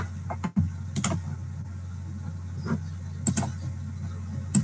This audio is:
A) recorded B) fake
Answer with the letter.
A